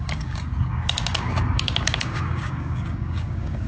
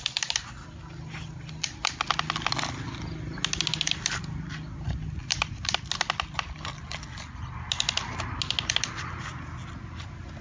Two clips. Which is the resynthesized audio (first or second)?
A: first